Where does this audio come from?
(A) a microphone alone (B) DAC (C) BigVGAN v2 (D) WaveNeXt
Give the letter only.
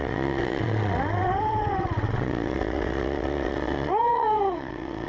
D